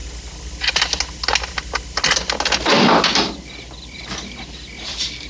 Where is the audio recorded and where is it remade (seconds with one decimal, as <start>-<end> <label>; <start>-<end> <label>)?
0.0-5.3 recorded